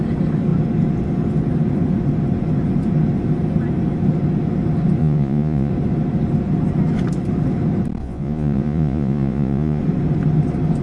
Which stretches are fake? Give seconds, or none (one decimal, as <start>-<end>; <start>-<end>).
5.0-5.7; 8.0-9.8